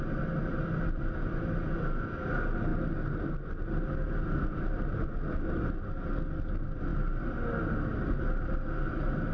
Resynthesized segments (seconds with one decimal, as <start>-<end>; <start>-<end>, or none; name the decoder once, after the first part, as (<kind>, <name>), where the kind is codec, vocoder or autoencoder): none